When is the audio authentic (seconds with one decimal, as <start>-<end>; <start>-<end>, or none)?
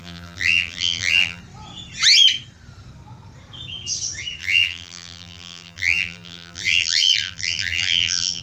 1.4-4.4